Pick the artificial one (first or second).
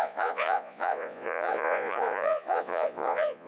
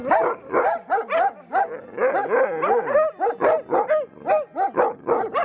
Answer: first